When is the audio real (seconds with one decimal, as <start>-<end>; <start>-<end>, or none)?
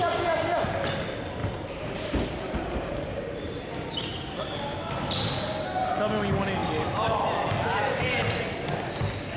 0.0-1.4; 4.4-9.4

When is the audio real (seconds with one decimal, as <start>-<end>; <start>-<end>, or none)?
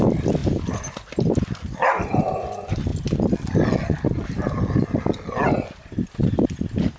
0.0-7.0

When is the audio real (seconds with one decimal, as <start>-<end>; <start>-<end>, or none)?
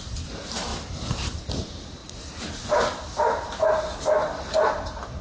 0.7-1.5